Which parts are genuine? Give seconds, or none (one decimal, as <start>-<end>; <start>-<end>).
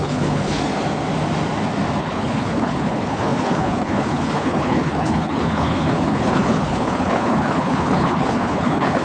0.6-2.0